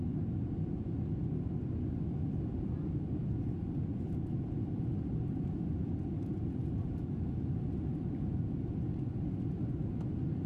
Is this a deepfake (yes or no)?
no